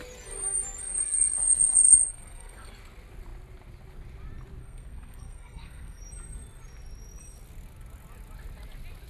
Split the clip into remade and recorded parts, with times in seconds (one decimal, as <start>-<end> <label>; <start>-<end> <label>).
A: 0.0-0.8 recorded; 0.8-2.7 remade; 2.7-4.6 recorded; 4.6-6.0 remade; 6.0-9.1 recorded